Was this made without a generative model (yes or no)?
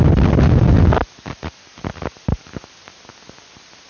yes